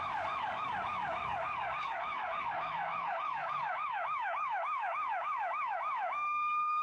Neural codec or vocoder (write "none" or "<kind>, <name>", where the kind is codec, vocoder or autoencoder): codec, DAC